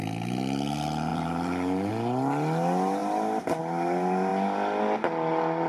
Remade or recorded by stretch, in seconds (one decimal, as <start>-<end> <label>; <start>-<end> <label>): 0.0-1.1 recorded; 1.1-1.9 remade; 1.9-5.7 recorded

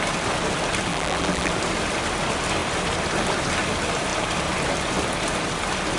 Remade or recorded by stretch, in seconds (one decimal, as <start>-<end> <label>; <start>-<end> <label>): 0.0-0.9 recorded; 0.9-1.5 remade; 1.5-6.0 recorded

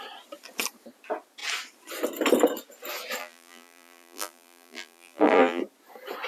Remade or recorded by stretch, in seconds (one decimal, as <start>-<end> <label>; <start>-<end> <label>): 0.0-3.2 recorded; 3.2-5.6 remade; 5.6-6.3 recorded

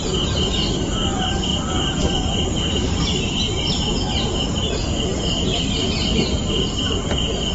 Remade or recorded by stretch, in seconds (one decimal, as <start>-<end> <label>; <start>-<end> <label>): 0.0-1.5 recorded; 1.5-3.2 remade; 3.2-5.1 recorded; 5.1-5.7 remade; 5.7-7.5 recorded

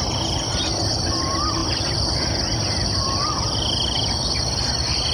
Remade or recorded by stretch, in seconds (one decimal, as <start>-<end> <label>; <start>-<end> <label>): 0.0-5.1 remade